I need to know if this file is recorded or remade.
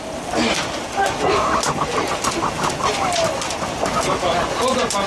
recorded